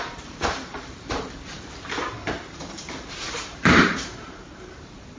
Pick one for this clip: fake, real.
fake